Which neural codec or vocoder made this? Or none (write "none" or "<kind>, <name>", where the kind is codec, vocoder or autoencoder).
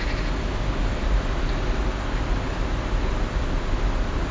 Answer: none